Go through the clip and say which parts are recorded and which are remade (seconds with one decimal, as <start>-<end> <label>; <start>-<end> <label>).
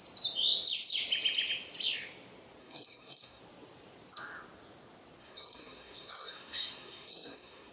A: 0.0-2.6 recorded; 2.6-3.4 remade; 3.4-5.2 recorded; 5.2-7.7 remade